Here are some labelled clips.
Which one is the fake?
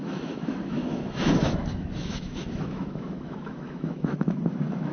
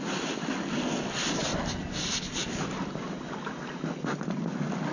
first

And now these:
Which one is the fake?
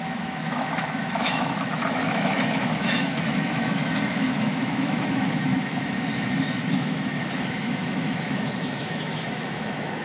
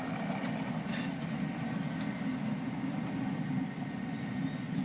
first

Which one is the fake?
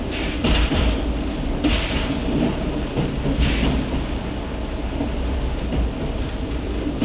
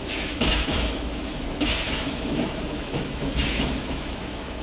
second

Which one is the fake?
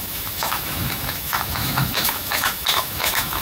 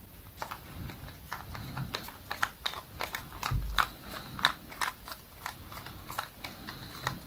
first